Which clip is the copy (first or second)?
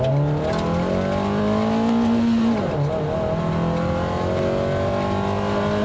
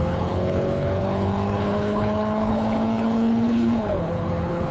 second